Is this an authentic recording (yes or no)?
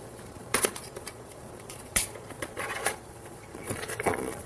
no